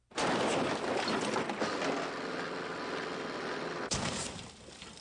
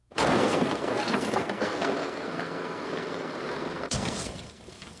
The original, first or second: first